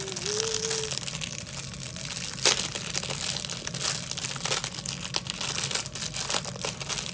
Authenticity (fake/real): real